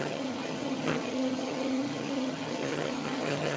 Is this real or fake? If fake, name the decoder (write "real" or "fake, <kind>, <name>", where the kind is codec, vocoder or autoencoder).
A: fake, vocoder, HiFi-GAN